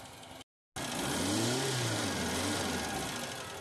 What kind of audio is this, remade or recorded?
recorded